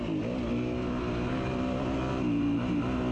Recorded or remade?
recorded